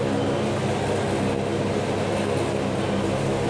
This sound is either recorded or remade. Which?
recorded